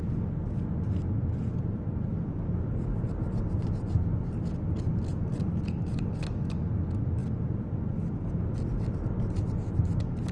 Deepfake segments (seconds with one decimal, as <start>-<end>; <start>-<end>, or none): none